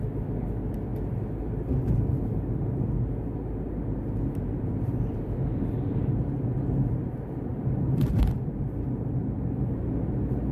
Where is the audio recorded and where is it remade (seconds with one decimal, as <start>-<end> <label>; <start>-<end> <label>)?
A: 0.0-7.5 recorded; 7.5-9.2 remade; 9.2-10.5 recorded